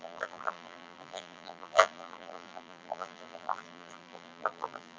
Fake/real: fake